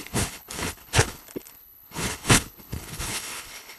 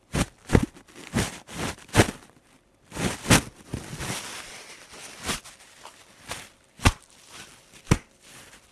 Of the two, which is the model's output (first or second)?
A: first